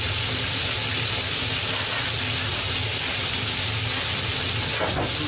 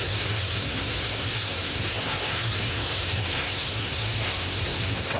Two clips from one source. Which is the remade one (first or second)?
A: second